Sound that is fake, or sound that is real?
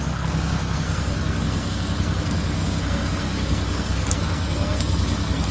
fake